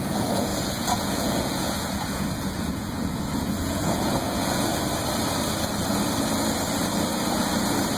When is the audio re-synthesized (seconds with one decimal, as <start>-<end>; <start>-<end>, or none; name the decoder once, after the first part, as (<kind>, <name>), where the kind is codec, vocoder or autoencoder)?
0.0-4.7 (vocoder, Vocos)